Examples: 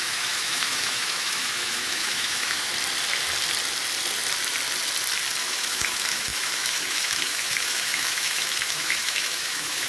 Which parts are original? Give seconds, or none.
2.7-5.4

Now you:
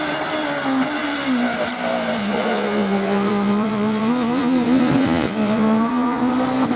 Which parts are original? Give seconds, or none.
0.0-2.2; 6.3-6.8

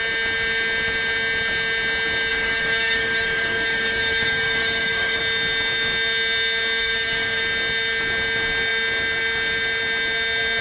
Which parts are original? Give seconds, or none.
0.0-2.3; 5.2-6.8; 7.4-10.6

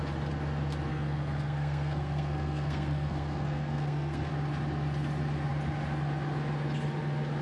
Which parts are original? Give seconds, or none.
0.0-0.9; 4.3-7.4

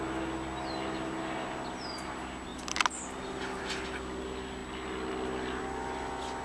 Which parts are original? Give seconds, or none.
0.0-6.4

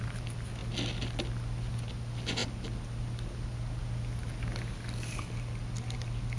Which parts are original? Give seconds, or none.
0.0-6.4